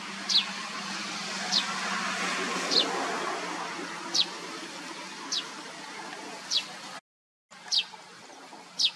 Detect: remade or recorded recorded